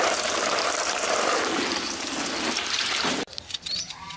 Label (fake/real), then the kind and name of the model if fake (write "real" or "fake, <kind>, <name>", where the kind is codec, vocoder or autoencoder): fake, vocoder, BigVGAN v2